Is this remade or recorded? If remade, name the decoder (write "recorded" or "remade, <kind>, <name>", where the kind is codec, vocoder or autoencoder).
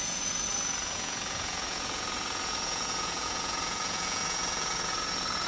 remade, vocoder, Vocos